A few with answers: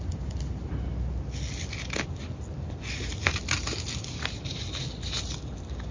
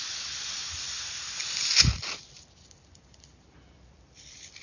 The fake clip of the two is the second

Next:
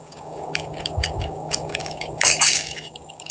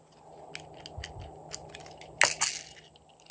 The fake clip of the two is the first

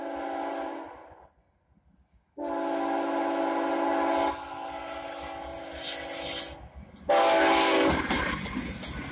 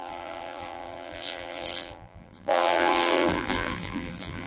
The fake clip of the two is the second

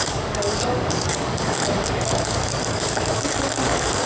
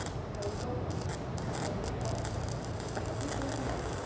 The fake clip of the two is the first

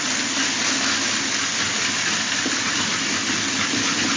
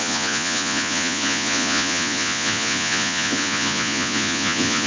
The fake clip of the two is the second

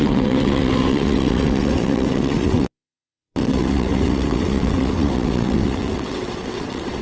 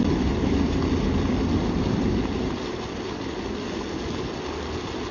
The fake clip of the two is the first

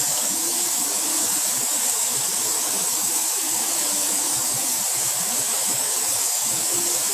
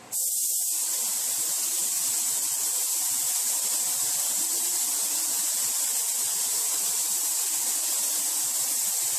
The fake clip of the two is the first